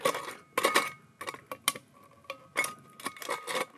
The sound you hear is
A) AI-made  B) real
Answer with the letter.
B